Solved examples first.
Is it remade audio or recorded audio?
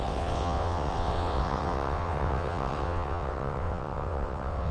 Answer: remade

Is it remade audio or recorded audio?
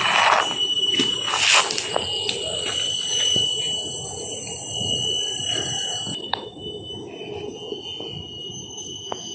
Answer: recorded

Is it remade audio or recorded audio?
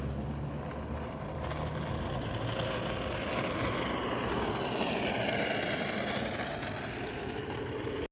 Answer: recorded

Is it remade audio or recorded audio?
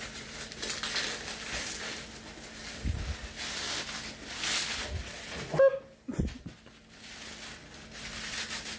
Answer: recorded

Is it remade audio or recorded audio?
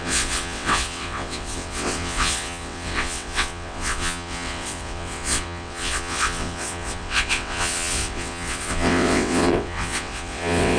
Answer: remade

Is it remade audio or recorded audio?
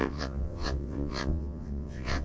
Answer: remade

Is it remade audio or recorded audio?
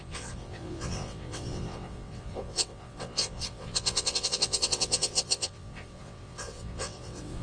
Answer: remade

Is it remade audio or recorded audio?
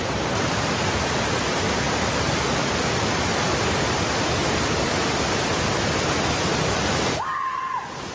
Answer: recorded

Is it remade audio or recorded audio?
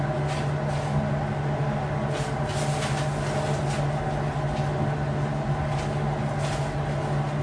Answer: recorded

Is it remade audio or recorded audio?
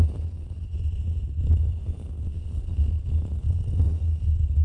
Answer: recorded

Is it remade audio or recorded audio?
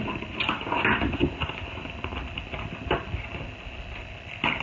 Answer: recorded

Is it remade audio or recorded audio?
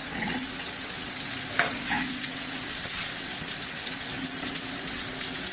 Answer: remade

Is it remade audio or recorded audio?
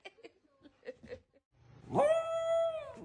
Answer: recorded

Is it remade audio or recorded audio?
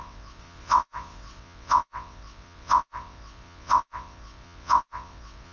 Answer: remade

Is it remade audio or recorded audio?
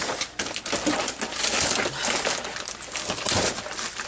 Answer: recorded